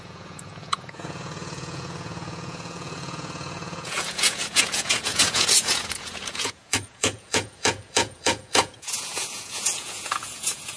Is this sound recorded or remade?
remade